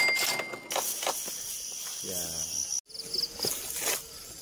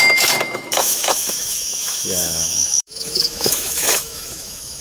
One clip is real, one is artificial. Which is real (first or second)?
first